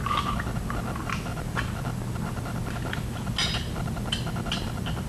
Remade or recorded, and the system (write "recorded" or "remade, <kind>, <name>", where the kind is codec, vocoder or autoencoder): recorded